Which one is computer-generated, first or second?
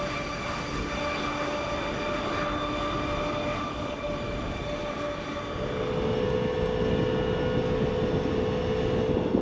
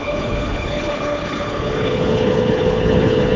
second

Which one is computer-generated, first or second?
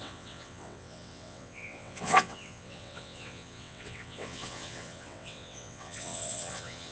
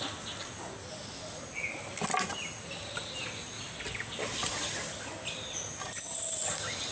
first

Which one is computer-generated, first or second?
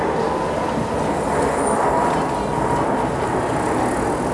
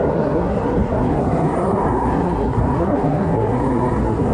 second